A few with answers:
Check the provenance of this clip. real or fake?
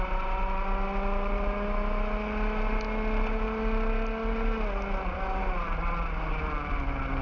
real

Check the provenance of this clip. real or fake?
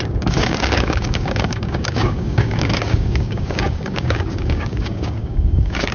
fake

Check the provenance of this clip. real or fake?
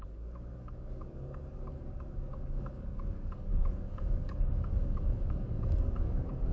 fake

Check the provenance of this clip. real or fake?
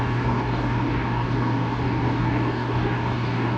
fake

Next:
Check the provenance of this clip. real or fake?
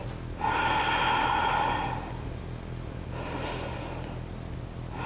real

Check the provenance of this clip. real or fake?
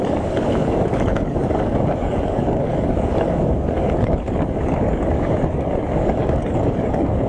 fake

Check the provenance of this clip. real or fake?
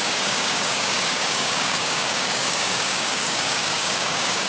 fake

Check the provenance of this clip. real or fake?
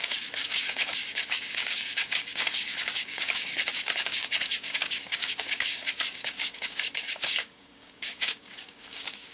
fake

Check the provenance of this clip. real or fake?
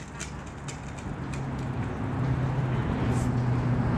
real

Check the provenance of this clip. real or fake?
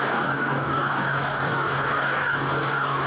fake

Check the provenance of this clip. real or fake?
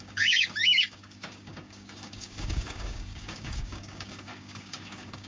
fake